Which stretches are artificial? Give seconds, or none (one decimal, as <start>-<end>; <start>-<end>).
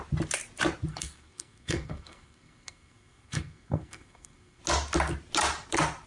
0.9-4.6